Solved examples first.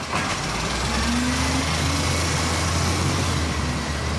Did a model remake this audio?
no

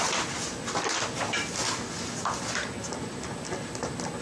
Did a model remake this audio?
no